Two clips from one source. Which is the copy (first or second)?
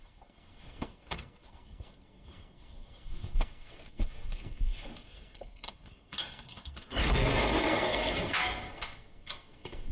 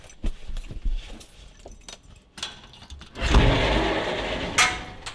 first